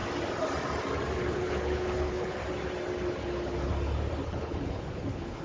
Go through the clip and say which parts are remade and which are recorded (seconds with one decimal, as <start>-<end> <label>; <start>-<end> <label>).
0.0-1.2 recorded; 1.2-2.4 remade; 2.4-3.2 recorded; 3.2-3.7 remade; 3.7-4.2 recorded; 4.2-5.4 remade